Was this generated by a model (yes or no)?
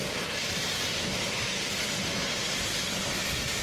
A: yes